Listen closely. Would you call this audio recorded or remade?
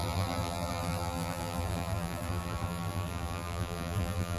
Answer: remade